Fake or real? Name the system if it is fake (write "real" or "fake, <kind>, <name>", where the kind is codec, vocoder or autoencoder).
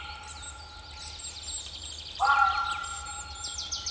real